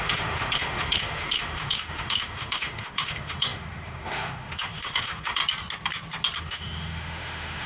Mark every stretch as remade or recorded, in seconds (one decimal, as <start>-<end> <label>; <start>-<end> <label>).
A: 0.0-5.4 remade; 5.4-6.4 recorded; 6.4-7.7 remade